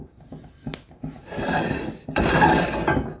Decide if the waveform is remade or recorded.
recorded